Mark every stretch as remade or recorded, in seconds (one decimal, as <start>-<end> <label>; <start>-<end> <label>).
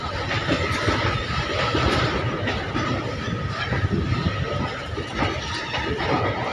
0.0-1.7 recorded; 1.7-3.8 remade; 3.8-6.5 recorded